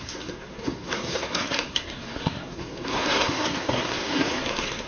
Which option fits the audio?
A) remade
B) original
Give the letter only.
A